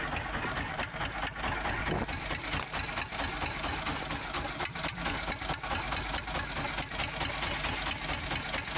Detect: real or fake real